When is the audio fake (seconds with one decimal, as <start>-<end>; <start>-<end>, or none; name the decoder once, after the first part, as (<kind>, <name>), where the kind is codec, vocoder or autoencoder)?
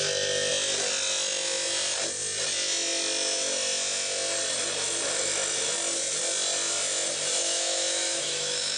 7.4-8.8 (autoencoder, DAC-VAE)